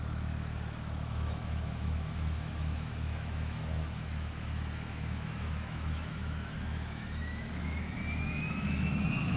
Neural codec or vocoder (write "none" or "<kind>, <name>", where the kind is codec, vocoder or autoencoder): autoencoder, DAC-VAE